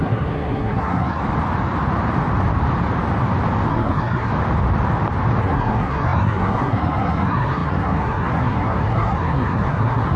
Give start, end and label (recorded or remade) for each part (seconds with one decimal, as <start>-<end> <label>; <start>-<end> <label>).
0.0-1.2 remade; 1.2-3.7 recorded; 3.7-4.3 remade; 4.3-5.4 recorded; 5.4-10.2 remade